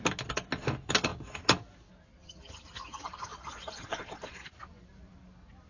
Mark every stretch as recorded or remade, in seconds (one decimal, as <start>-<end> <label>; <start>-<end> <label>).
0.0-3.3 recorded; 3.3-4.5 remade; 4.5-5.7 recorded